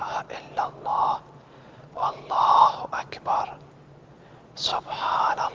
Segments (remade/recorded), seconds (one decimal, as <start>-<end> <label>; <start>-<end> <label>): 0.0-1.6 recorded; 1.6-2.0 remade; 2.0-4.1 recorded; 4.1-4.7 remade; 4.7-5.5 recorded